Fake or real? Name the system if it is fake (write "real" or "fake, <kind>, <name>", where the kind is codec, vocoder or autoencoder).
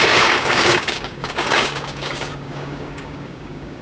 fake, codec, DAC